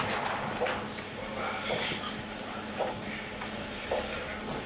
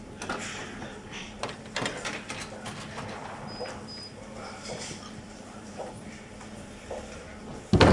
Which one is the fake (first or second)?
second